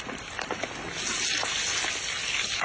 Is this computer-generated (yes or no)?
no